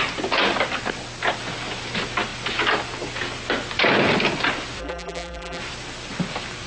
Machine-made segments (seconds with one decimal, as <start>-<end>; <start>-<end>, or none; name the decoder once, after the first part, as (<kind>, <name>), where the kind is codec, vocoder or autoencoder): 4.8-5.6 (vocoder, BigVGAN v2)